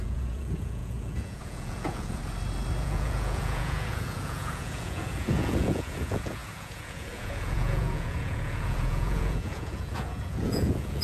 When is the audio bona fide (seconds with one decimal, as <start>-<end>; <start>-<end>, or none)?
2.2-2.8